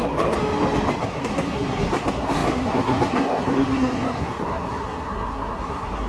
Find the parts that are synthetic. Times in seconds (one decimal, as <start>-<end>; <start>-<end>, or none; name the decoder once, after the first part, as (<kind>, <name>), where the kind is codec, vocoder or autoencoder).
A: 0.0-0.4 (codec, SNAC); 1.0-6.1